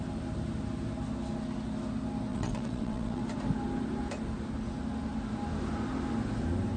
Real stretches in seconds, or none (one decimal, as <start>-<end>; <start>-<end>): 0.0-2.3; 3.2-6.8